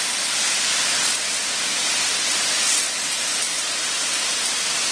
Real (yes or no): yes